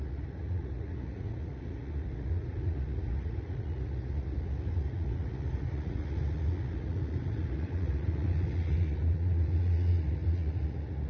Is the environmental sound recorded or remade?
remade